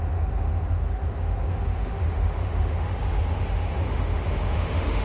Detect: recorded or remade remade